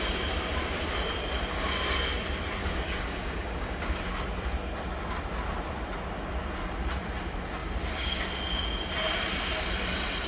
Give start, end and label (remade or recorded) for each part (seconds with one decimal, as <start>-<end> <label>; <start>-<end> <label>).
0.0-2.6 recorded; 2.6-4.1 remade; 4.1-10.3 recorded